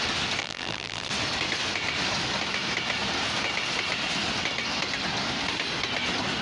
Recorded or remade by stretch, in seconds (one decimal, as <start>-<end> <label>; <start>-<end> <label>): 0.0-0.4 recorded; 0.4-1.1 remade; 1.1-6.4 recorded